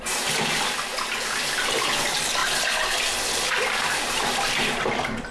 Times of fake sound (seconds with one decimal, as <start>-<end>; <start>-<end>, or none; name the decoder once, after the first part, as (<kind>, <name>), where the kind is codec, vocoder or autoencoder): none